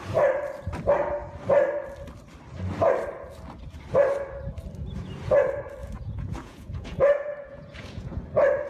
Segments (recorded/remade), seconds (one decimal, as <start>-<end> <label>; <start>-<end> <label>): 0.0-5.8 recorded; 5.8-8.2 remade; 8.2-8.7 recorded